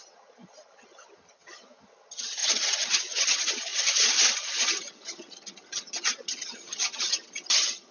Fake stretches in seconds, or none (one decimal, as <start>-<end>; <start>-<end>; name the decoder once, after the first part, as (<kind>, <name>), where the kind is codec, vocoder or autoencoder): 0.0-7.9 (vocoder, HiFi-GAN)